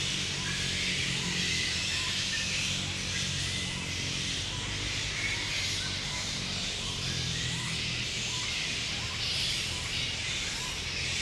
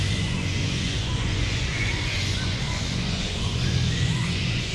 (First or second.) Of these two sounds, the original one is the first